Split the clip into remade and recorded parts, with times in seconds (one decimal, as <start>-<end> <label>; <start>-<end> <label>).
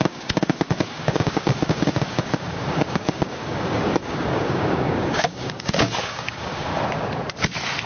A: 0.0-6.7 remade; 6.7-7.9 recorded